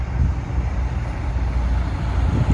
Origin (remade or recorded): recorded